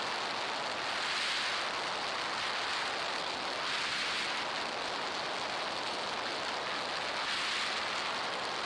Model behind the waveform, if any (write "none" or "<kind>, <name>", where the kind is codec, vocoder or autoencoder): none